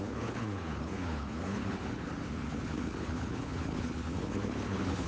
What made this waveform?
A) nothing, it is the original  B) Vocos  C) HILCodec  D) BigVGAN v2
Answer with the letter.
C